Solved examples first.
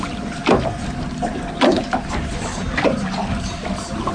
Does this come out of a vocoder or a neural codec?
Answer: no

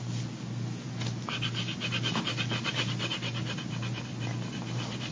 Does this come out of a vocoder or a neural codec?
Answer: no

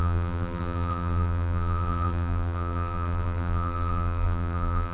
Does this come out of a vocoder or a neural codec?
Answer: yes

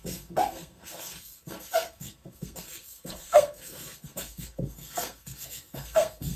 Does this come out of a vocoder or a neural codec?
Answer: yes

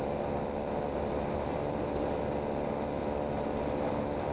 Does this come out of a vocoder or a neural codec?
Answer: no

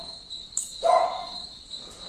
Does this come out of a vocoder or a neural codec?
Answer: yes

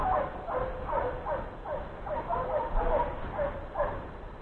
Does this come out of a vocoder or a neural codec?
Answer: no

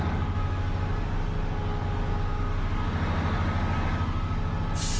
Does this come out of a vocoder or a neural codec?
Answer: no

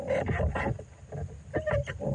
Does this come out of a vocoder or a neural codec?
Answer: no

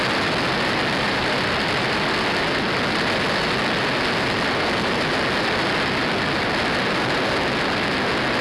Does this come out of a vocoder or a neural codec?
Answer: no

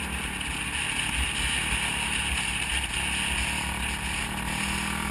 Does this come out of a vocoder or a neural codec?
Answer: no